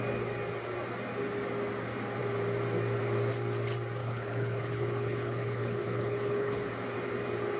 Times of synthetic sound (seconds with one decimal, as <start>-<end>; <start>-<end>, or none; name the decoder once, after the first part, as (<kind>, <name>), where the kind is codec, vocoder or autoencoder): 4.0-6.7 (codec, HILCodec)

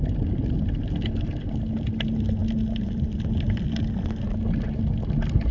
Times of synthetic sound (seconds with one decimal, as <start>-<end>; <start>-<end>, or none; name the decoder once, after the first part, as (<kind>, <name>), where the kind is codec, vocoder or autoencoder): none

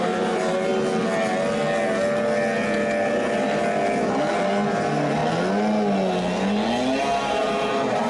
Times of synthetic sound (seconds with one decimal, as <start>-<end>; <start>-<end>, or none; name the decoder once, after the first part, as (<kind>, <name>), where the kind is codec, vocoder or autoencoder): 0.0-0.7 (vocoder, BigVGAN v2); 4.7-5.2; 7.0-8.1

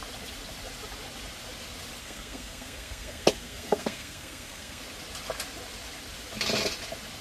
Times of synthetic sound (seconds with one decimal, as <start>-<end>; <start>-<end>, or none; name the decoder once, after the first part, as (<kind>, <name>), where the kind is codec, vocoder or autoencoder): 2.0-4.8 (codec, SNAC)

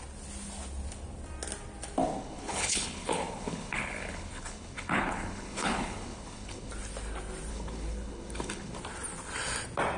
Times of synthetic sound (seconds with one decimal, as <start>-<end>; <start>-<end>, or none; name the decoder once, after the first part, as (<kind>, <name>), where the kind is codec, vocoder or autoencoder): 2.0-6.7 (codec, HILCodec); 7.5-8.8

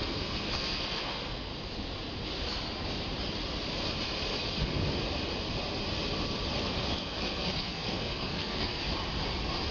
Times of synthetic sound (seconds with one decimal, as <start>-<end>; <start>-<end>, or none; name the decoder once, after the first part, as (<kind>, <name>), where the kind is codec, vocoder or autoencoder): 0.0-1.5 (codec, SNAC); 6.6-8.8